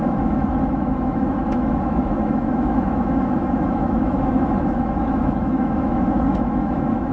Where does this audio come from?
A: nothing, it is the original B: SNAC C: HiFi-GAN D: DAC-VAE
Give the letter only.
D